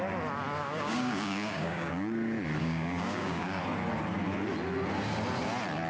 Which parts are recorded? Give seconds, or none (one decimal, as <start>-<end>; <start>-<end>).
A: 0.0-0.6; 1.9-2.6; 3.6-5.9